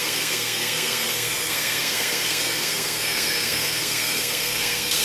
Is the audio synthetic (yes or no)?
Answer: yes